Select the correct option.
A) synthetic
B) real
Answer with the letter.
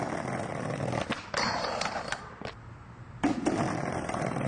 B